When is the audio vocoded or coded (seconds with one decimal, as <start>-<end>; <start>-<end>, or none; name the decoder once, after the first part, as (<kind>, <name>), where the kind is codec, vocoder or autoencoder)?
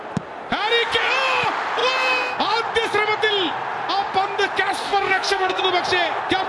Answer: 4.8-5.6 (codec, SNAC)